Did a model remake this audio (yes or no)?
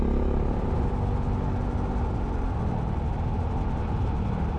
no